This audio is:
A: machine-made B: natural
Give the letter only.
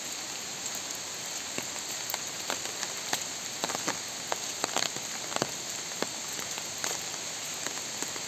B